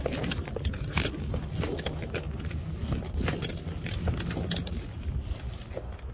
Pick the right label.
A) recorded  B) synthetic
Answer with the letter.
A